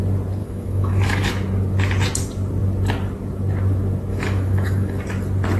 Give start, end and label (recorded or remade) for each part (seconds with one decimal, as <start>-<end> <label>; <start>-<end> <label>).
0.0-0.4 recorded; 0.4-1.3 remade; 1.3-4.1 recorded; 4.1-5.0 remade; 5.0-5.6 recorded